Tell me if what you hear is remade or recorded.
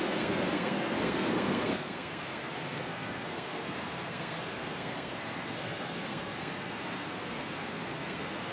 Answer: remade